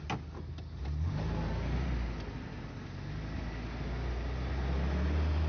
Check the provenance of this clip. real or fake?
real